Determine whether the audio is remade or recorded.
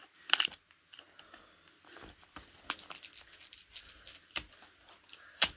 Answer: recorded